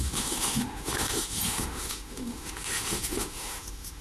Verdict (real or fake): fake